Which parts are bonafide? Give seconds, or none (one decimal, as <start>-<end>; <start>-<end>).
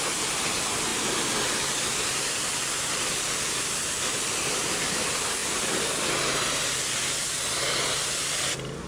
0.0-8.9